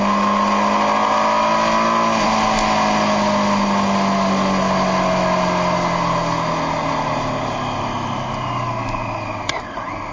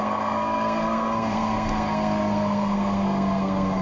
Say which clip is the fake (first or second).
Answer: second